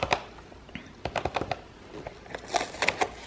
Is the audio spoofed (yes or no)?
no